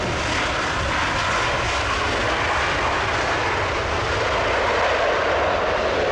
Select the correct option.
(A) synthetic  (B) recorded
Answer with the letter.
B